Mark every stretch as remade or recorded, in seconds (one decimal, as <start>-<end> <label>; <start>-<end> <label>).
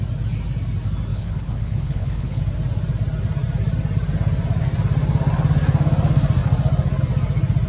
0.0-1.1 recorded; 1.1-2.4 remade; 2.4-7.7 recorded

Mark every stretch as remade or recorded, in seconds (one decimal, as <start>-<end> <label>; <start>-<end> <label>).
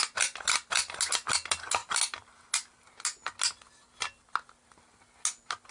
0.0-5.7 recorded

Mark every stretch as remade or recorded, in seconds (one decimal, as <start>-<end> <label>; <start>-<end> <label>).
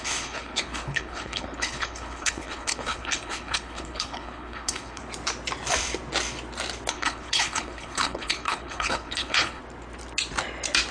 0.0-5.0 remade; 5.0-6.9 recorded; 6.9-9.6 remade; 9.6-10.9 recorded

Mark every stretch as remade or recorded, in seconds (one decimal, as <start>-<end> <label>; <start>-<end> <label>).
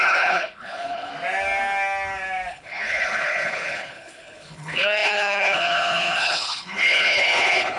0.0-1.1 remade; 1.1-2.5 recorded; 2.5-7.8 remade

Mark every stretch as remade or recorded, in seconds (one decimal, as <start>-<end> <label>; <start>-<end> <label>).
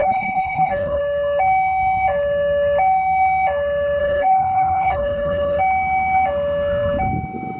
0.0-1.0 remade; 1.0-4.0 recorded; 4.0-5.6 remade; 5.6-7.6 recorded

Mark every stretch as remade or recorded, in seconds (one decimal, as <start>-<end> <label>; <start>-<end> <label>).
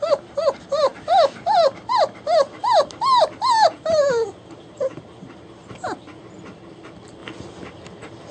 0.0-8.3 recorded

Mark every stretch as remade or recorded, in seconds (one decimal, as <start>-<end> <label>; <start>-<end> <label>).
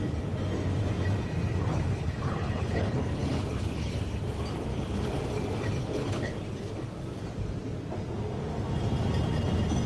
0.0-1.5 recorded; 1.5-3.9 remade; 3.9-4.7 recorded; 4.7-5.2 remade; 5.2-5.8 recorded; 5.8-6.3 remade; 6.3-9.9 recorded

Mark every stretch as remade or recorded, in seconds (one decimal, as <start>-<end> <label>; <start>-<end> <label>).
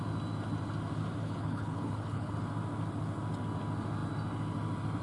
0.0-1.2 recorded; 1.2-2.3 remade; 2.3-5.0 recorded